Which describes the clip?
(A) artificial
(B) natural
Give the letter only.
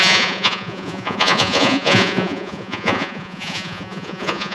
A